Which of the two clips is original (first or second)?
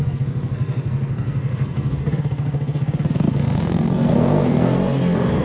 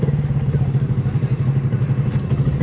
second